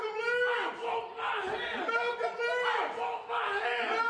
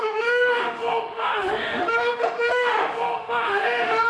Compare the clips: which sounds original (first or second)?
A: first